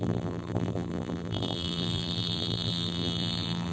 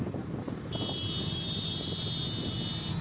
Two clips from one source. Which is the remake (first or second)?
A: first